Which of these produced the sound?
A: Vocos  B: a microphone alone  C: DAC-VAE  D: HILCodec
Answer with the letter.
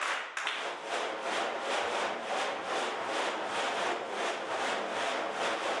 B